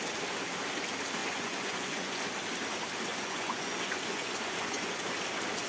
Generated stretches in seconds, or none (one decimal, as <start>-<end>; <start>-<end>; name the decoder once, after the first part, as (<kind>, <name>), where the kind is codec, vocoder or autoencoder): 1.2-2.2 (vocoder, Vocos); 3.1-5.0